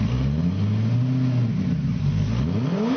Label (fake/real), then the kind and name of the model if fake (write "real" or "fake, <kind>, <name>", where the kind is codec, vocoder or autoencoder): real